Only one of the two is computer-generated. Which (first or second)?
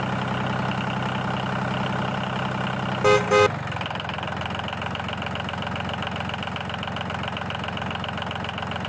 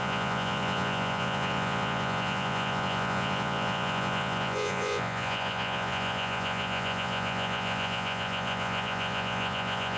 second